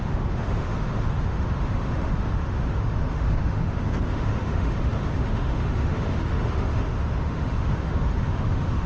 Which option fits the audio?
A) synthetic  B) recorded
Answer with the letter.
A